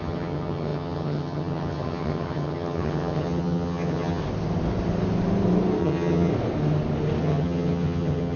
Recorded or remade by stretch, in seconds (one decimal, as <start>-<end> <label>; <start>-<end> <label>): 0.0-4.2 remade; 4.2-5.8 recorded; 5.8-6.3 remade; 6.3-7.2 recorded; 7.2-8.4 remade

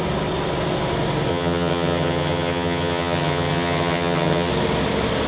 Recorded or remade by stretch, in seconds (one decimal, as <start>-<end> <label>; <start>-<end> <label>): 0.0-1.3 recorded; 1.3-4.5 remade; 4.5-5.3 recorded

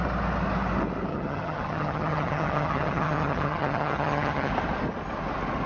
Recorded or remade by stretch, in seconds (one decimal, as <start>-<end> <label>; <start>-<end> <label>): 0.0-1.1 recorded; 1.1-4.5 remade; 4.5-5.7 recorded

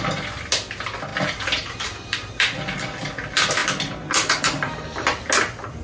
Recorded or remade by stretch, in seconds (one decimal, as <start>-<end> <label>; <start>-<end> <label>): 0.0-5.8 recorded

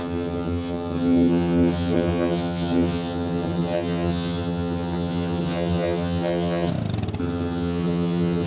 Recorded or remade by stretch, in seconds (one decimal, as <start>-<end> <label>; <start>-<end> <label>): 0.0-6.7 remade; 6.7-7.2 recorded; 7.2-8.5 remade

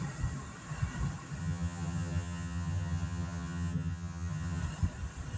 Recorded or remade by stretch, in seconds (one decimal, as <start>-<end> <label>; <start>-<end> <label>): 0.0-1.4 recorded; 1.4-4.6 remade; 4.6-5.4 recorded